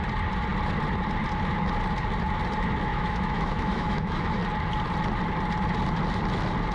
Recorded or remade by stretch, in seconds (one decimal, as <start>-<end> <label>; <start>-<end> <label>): 0.0-2.9 recorded; 2.9-4.4 remade; 4.4-6.7 recorded